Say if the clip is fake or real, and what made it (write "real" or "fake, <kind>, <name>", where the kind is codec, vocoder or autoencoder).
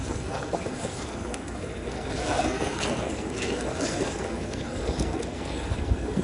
fake, codec, SNAC